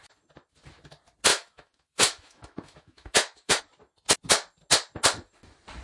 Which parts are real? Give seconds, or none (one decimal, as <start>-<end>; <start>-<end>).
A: 0.0-1.3; 3.6-5.8